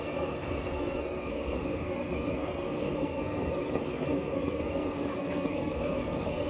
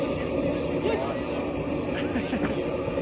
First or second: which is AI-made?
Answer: first